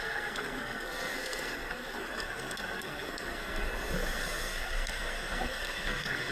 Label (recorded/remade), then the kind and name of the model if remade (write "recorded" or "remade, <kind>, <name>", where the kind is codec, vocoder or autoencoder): remade, codec, SNAC